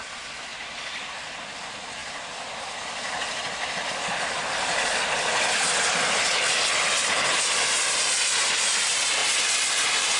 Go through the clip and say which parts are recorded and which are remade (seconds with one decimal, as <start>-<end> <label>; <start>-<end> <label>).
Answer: 0.0-10.2 recorded